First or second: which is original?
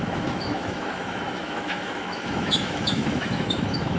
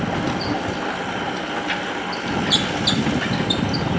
second